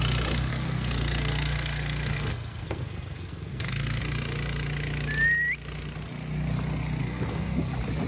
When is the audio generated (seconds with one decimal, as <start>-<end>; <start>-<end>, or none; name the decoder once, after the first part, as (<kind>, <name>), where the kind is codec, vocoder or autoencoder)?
0.5-4.0 (codec, SNAC); 7.0-7.6